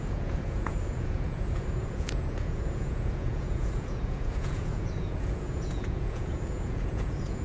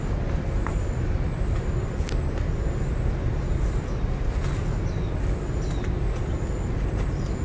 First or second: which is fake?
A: first